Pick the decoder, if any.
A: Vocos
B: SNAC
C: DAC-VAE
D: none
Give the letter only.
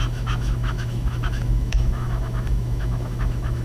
C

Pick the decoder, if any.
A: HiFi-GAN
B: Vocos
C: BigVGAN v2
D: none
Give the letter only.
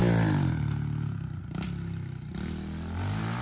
D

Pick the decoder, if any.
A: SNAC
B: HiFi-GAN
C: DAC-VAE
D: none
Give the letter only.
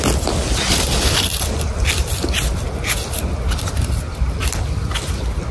D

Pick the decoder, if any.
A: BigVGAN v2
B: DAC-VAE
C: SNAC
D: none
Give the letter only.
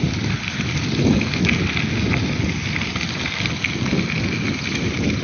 D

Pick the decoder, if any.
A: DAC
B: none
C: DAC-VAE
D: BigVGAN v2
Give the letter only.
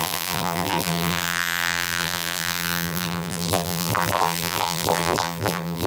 D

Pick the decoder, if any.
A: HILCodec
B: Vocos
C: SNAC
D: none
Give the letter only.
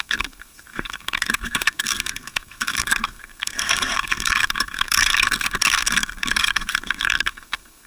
C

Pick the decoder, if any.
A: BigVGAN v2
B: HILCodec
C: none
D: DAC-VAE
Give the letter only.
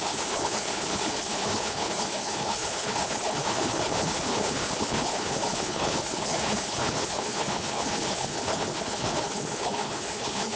B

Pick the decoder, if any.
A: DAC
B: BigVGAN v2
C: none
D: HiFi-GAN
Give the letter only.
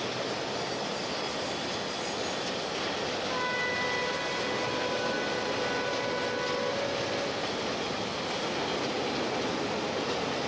C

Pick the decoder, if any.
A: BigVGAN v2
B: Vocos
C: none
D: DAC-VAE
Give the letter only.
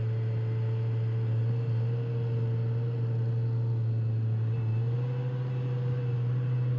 C